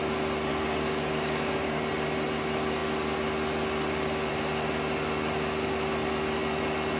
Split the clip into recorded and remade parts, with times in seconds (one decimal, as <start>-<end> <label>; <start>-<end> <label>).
0.0-0.5 recorded; 0.5-1.8 remade; 1.8-7.0 recorded